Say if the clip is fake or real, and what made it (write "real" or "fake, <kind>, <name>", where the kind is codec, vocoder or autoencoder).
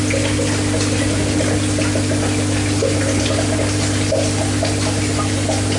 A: real